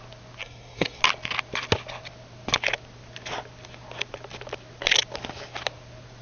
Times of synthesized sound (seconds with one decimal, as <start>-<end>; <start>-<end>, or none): 0.4-1.0